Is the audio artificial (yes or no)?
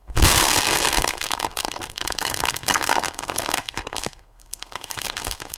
yes